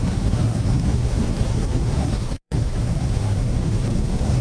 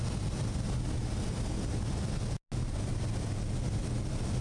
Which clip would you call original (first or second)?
second